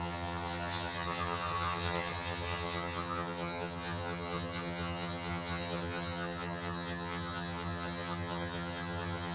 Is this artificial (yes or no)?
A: yes